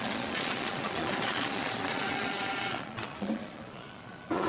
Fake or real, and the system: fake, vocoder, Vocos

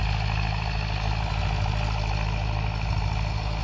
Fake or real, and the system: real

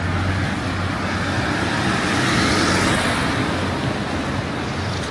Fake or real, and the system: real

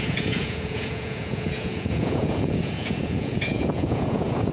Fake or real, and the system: fake, vocoder, Vocos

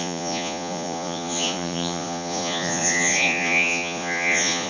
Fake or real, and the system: fake, vocoder, Vocos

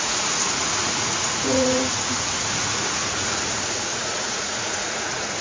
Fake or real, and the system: fake, vocoder, Vocos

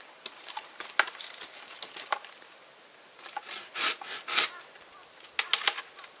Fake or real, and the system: real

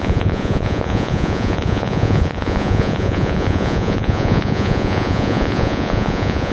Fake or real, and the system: fake, vocoder, Vocos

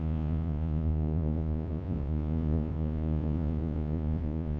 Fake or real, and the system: fake, vocoder, Vocos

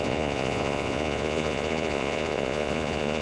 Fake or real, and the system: fake, vocoder, Vocos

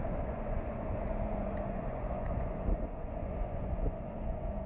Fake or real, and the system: fake, vocoder, Vocos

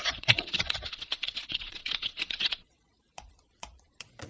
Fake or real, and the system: fake, vocoder, Vocos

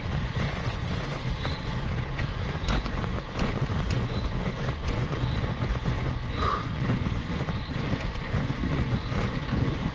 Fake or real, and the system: fake, vocoder, Vocos